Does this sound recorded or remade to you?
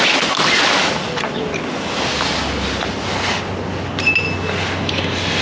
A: recorded